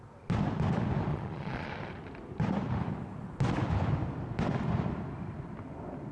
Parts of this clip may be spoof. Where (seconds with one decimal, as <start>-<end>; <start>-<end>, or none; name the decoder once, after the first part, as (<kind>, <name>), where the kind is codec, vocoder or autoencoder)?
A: 1.1-1.7 (vocoder, Vocos)